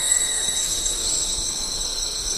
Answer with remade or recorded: remade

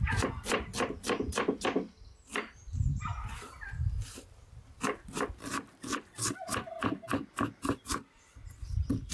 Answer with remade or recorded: recorded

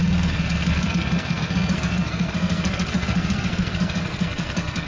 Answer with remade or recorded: remade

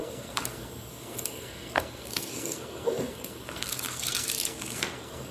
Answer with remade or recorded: remade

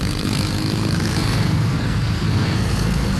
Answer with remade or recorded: remade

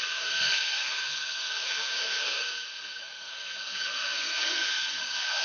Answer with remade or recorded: remade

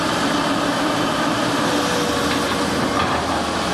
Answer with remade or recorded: recorded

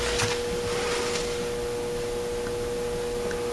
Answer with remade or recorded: recorded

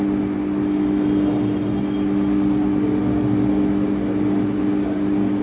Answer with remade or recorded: recorded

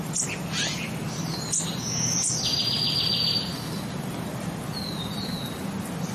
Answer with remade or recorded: recorded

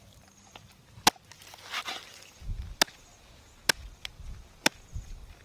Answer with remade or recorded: recorded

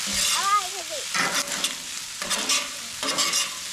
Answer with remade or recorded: recorded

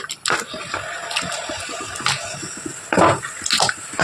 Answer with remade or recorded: recorded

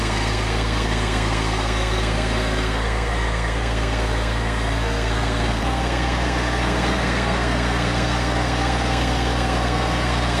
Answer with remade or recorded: remade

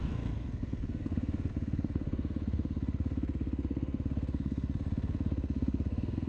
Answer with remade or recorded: remade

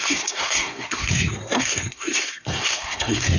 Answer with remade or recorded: remade